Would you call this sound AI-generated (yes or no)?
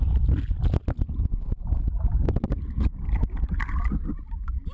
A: no